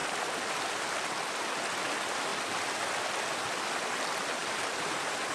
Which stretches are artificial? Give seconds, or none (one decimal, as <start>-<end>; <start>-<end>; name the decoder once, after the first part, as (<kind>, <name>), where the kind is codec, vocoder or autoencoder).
4.4-5.3 (vocoder, BigVGAN v2)